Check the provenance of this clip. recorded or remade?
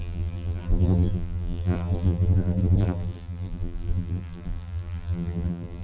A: remade